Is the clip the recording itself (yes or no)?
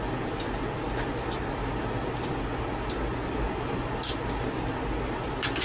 yes